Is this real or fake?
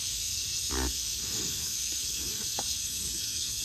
fake